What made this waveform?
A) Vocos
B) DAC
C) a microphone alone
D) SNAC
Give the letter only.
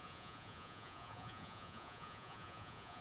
A